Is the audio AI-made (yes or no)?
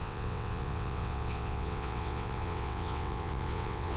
yes